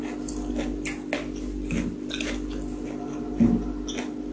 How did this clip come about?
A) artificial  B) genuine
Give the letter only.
B